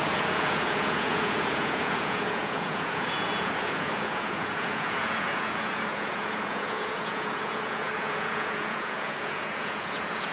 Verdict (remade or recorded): remade